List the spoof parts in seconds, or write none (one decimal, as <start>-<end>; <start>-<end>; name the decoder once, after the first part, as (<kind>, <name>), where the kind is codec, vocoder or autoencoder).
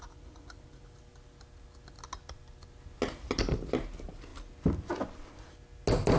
none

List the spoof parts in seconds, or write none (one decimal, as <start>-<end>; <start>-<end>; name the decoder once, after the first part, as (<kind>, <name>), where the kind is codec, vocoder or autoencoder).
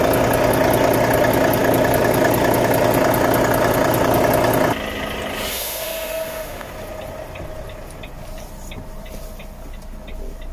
5.5-6.7 (autoencoder, DAC-VAE)